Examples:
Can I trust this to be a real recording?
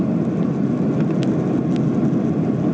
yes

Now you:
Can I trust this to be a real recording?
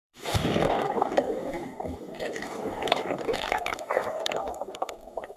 no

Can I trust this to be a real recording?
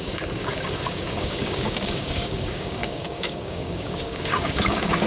no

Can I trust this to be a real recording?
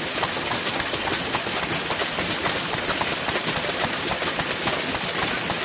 yes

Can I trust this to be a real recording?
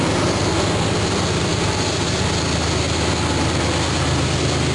yes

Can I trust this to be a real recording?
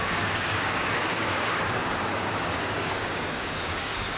no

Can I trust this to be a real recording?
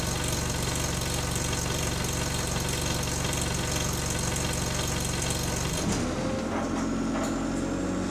yes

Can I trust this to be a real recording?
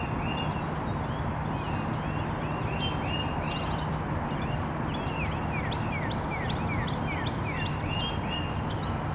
yes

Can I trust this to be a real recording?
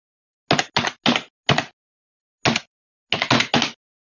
yes